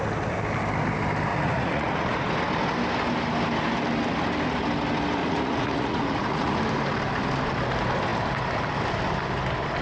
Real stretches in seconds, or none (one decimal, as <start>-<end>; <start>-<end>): 0.0-1.3; 2.3-5.2; 6.6-9.8